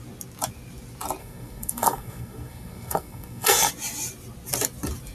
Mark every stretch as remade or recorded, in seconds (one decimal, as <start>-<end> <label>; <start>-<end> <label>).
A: 0.0-1.2 recorded; 1.2-3.7 remade; 3.7-5.1 recorded